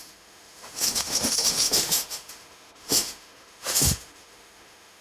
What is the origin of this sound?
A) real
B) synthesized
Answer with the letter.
B